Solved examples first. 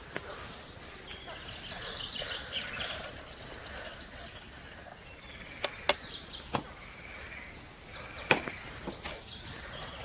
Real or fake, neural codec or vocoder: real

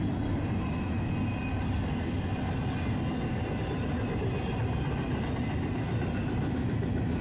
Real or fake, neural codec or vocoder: real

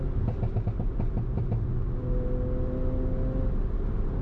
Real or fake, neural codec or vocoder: real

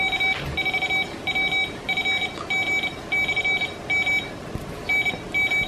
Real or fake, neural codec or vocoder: real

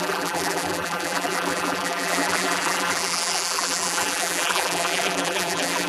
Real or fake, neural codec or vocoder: fake, vocoder, BigVGAN v2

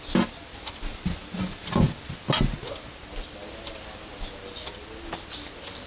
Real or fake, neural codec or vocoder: real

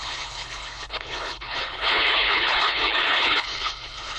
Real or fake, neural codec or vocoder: fake, codec, HILCodec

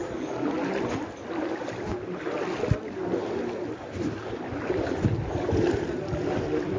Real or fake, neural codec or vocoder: real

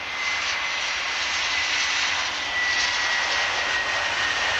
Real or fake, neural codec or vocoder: real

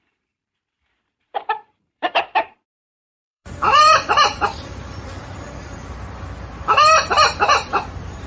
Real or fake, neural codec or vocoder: fake, vocoder, BigVGAN v2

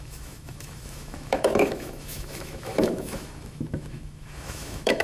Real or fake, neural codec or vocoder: fake, autoencoder, DAC-VAE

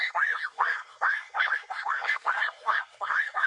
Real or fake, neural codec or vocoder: fake, codec, SNAC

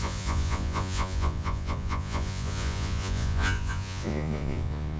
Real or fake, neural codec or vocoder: fake, vocoder, Vocos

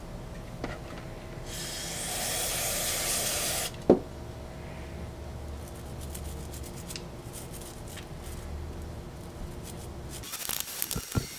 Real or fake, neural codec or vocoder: real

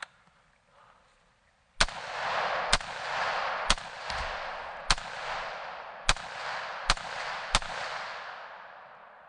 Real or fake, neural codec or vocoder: real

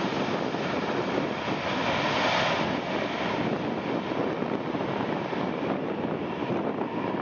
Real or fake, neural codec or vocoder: real